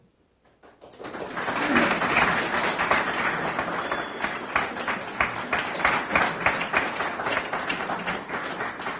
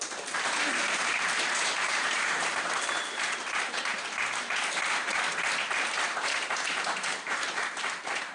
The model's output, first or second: second